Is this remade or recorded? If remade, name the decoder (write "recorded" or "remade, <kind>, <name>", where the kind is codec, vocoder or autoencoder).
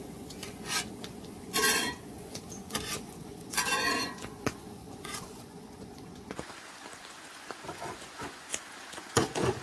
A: remade, vocoder, Vocos